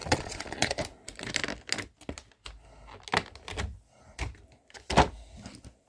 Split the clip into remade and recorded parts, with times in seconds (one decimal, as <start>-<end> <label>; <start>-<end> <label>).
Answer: 0.0-0.8 remade; 0.8-5.9 recorded